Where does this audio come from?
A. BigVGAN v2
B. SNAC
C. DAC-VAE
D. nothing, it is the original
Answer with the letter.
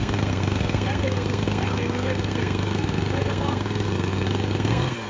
B